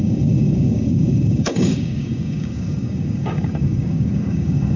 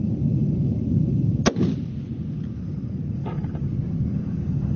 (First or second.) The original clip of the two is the second